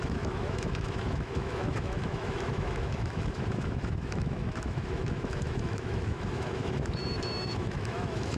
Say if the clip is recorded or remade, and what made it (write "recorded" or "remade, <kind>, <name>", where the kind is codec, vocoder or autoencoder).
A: remade, autoencoder, DAC-VAE